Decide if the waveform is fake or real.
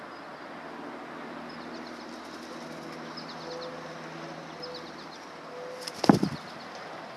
real